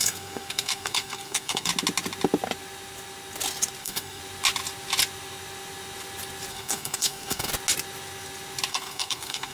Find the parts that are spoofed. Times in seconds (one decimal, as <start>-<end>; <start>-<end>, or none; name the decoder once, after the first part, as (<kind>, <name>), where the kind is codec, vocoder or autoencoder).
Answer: 0.0-1.7 (codec, SNAC); 3.8-4.2; 6.5-7.5; 8.7-9.5